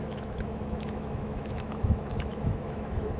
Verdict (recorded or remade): remade